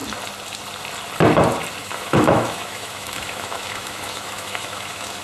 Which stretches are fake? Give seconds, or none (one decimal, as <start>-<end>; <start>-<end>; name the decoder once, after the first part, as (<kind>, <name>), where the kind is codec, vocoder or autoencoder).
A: 1.8-5.2 (autoencoder, DAC-VAE)